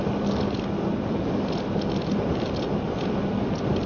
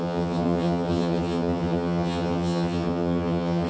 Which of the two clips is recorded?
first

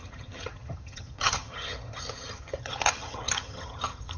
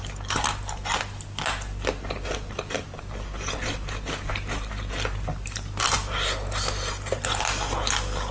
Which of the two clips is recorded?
second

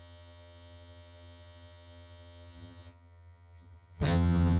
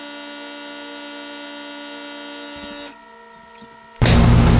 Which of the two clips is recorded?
second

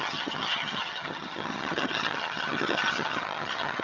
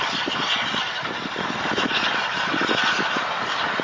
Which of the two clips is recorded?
second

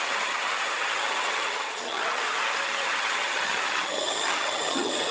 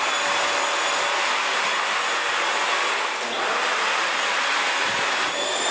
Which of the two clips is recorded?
second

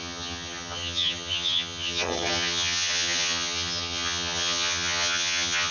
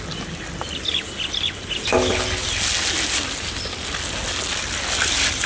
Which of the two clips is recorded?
second